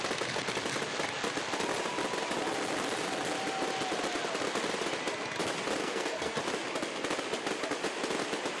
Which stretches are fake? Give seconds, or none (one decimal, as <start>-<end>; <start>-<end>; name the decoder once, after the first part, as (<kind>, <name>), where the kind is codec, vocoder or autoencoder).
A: 5.8-6.4 (codec, SNAC)

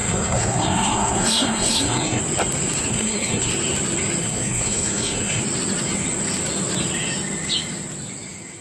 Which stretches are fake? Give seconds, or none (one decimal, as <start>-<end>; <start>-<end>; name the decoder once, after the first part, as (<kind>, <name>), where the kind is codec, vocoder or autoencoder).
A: 0.0-2.2 (codec, SNAC); 2.9-3.5; 4.2-5.4

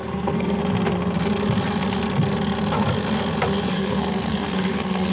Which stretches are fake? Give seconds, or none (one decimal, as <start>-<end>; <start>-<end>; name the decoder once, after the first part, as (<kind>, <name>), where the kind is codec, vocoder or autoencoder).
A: 0.0-0.6 (codec, SNAC); 3.7-5.1